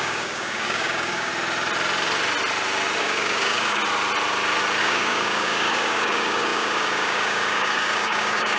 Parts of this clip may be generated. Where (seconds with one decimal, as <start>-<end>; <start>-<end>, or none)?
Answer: 0.0-1.3; 3.0-3.8; 4.8-8.6